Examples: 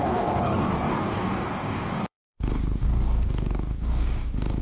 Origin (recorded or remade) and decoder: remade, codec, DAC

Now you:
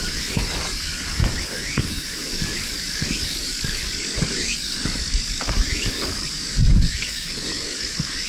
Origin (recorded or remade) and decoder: remade, codec, DAC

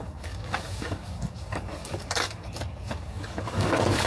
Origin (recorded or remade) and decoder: remade, codec, DAC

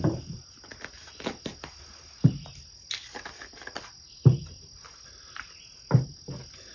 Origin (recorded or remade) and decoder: recorded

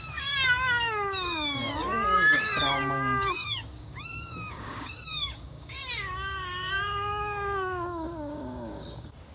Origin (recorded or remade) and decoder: remade, codec, DAC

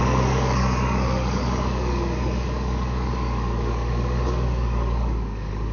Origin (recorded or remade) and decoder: remade, codec, DAC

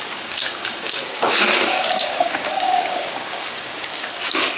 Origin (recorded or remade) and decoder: remade, codec, DAC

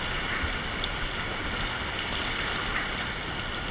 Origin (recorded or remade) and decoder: recorded